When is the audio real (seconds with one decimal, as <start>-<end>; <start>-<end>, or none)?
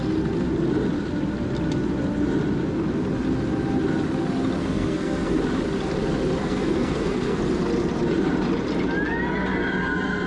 0.0-4.6; 5.4-6.4; 7.4-10.3